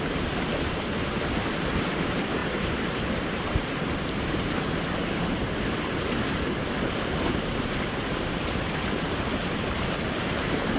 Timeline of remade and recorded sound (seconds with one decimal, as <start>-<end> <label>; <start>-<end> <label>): 0.0-10.8 remade